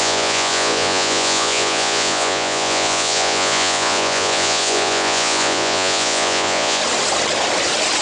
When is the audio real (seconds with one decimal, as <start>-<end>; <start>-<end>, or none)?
6.8-8.0